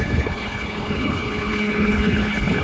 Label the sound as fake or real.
fake